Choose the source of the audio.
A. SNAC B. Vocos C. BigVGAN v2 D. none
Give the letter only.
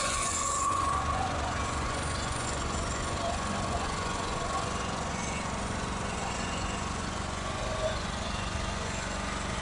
B